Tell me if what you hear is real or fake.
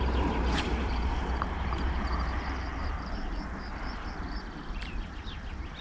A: fake